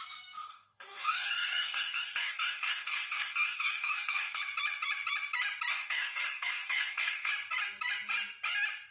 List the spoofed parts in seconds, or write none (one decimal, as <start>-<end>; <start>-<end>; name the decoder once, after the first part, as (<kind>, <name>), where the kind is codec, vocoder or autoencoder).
0.5-4.4 (codec, DAC); 5.7-7.3

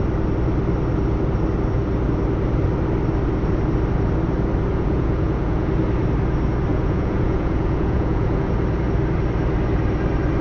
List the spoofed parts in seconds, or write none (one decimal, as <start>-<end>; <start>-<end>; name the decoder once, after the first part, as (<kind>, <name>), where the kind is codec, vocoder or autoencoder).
4.7-5.7 (vocoder, Vocos); 6.7-8.5

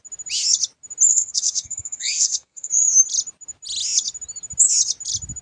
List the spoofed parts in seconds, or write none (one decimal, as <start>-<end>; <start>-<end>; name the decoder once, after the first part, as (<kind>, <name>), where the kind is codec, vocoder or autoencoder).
1.1-2.7 (codec, SNAC)

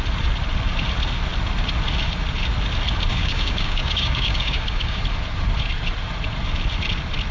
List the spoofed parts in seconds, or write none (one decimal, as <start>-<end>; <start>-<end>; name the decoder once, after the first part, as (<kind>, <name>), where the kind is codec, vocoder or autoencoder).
3.1-5.0 (codec, DAC)